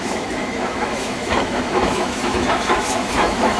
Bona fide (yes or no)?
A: no